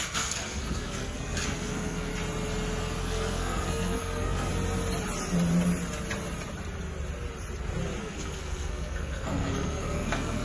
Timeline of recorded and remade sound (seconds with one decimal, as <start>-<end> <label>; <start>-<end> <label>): 0.0-2.1 remade; 2.1-3.0 recorded; 3.0-4.5 remade; 4.5-8.0 recorded; 8.0-10.4 remade